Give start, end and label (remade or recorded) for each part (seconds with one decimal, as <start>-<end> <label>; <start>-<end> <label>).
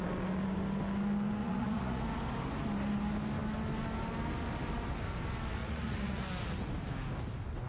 0.0-1.4 recorded; 1.4-2.0 remade; 2.0-5.6 recorded; 5.6-6.3 remade; 6.3-7.7 recorded